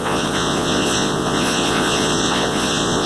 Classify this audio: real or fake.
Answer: fake